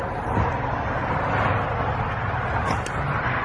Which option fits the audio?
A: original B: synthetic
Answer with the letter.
A